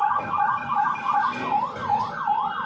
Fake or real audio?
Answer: real